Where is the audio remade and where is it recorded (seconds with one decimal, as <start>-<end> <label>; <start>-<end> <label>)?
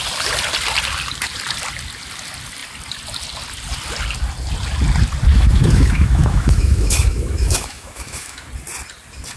0.0-5.3 recorded; 5.3-8.5 remade; 8.5-9.4 recorded